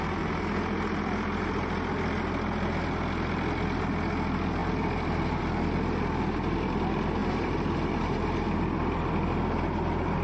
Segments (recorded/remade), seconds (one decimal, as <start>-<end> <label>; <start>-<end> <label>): 0.0-4.6 recorded; 4.6-5.4 remade; 5.4-7.2 recorded; 7.2-7.9 remade; 7.9-10.2 recorded